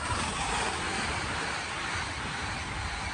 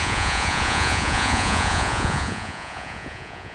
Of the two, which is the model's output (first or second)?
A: second